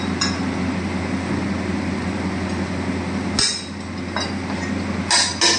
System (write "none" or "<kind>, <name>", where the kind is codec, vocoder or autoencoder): none